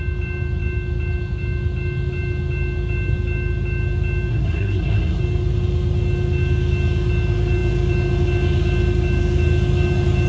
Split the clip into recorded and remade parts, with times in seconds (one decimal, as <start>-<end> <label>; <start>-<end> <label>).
0.0-4.3 recorded; 4.3-5.2 remade; 5.2-10.3 recorded